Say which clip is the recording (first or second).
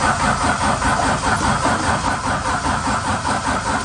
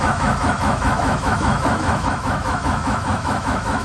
first